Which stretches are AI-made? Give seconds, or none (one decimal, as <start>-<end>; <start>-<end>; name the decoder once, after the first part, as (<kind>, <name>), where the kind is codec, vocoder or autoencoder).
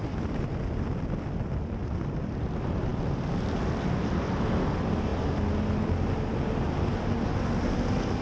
0.0-5.1 (vocoder, BigVGAN v2)